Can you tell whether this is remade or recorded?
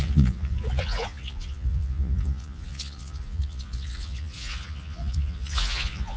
remade